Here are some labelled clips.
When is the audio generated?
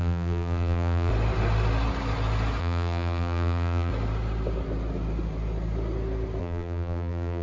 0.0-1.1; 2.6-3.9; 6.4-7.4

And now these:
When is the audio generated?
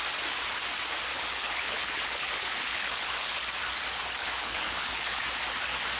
1.1-3.3; 4.2-5.2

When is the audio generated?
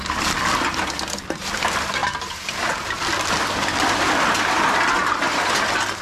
none